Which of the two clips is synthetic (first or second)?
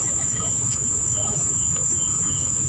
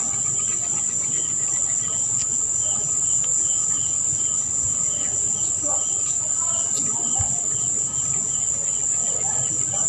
first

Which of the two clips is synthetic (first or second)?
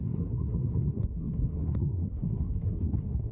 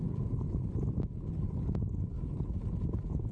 first